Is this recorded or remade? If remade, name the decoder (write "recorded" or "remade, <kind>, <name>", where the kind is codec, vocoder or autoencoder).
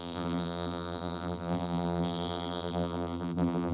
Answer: remade, vocoder, BigVGAN v2